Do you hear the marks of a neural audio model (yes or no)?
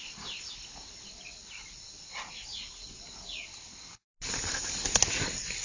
no